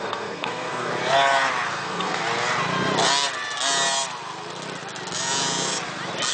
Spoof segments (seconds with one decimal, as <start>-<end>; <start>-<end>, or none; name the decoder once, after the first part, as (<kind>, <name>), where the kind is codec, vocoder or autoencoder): 0.0-0.9 (codec, SNAC); 1.7-2.2

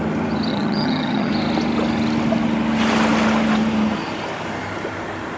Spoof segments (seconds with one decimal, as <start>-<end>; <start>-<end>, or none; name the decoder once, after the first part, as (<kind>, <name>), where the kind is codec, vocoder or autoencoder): 0.5-1.3 (vocoder, HiFi-GAN)

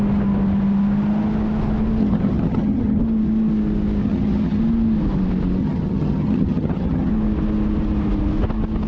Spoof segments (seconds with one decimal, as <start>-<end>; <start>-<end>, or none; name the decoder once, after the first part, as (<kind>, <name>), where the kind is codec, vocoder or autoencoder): 2.0-3.0 (vocoder, HiFi-GAN); 4.0-4.6; 5.6-7.1

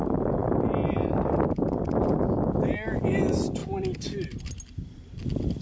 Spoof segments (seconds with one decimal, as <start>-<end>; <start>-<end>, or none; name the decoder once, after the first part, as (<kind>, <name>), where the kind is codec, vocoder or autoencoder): none

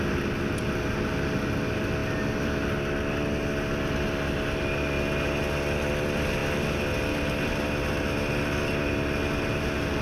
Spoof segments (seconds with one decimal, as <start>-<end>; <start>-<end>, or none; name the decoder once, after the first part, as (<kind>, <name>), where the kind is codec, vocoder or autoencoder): none

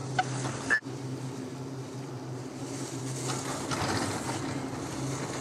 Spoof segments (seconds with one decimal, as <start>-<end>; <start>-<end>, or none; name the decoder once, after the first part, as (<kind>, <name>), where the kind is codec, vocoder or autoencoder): none